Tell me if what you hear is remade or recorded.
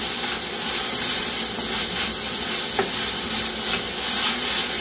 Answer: recorded